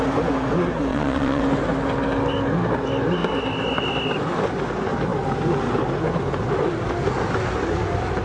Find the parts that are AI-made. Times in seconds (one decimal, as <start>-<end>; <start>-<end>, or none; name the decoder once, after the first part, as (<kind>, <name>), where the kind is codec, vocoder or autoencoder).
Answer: 0.9-1.4 (vocoder, Vocos)